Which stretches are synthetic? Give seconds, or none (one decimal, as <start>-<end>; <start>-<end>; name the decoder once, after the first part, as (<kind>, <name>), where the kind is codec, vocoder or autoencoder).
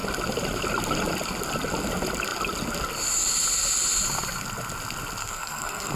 5.2-6.0 (codec, SNAC)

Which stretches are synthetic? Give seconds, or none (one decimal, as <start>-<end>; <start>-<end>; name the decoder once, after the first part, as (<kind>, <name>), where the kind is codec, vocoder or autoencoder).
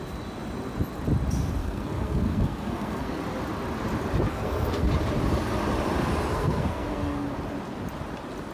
1.6-3.2 (codec, SNAC); 4.3-4.9; 6.3-7.3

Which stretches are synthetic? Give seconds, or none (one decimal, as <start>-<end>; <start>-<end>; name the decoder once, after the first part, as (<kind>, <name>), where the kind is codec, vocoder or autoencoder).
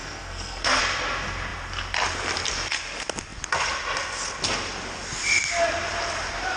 0.0-0.8 (codec, SNAC)